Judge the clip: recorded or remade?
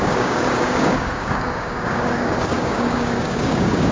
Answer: remade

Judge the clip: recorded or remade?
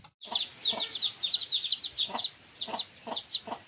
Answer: recorded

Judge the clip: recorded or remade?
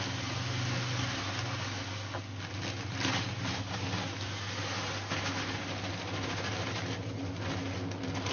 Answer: recorded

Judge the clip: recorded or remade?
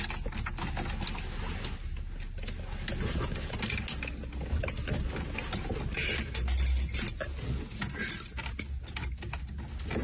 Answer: recorded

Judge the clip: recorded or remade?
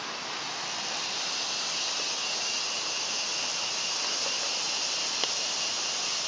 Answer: recorded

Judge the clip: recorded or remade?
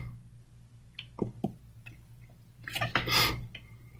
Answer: recorded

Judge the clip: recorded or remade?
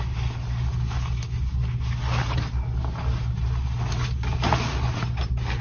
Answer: recorded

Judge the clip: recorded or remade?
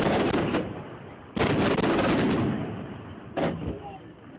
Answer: recorded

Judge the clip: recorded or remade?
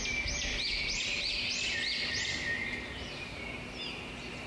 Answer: recorded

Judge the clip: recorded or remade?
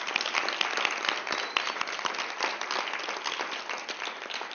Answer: recorded